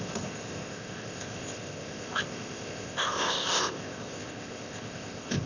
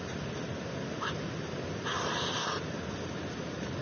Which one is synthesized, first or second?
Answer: first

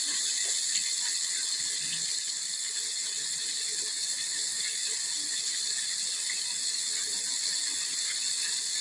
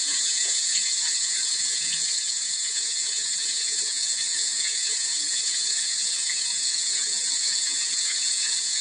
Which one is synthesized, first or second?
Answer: second